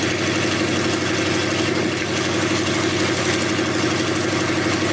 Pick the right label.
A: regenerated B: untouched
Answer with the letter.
B